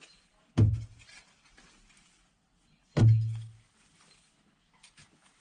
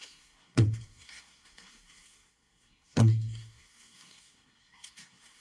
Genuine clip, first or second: first